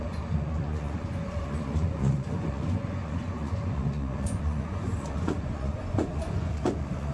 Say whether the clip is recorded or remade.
remade